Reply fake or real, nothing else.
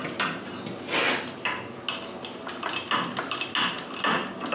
real